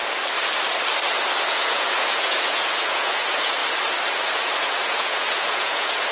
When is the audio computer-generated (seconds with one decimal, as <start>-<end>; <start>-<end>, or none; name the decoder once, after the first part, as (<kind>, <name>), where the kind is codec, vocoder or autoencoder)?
1.5-3.6 (vocoder, Vocos); 4.1-6.1